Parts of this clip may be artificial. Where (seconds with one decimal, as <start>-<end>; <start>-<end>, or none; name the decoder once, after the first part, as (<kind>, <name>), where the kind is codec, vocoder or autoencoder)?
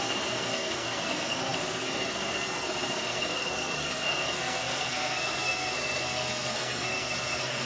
0.0-7.7 (codec, SNAC)